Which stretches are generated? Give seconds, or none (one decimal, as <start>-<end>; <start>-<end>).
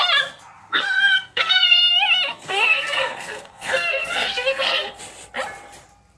0.6-1.8; 2.3-5.0